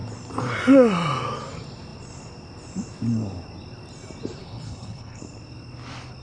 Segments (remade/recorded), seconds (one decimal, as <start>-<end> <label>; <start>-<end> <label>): 0.0-4.4 recorded; 4.4-5.2 remade; 5.2-6.2 recorded